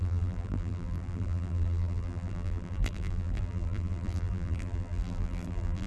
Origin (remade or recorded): remade